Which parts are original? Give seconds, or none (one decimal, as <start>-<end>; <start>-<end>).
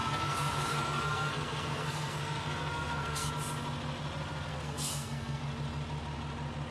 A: 3.3-4.5; 5.4-6.7